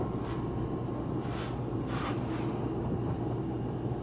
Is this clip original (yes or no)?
yes